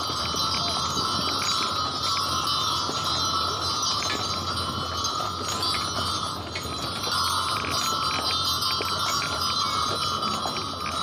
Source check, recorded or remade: recorded